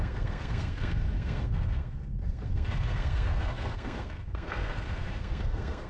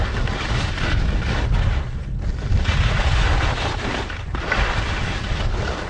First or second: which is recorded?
second